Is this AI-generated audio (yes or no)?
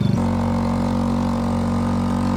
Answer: no